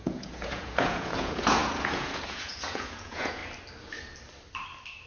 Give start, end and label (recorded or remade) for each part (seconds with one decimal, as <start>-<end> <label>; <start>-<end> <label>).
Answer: 0.0-3.4 remade; 3.4-5.1 recorded